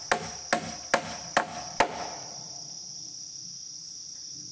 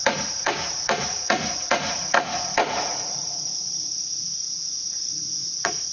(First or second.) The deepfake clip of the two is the second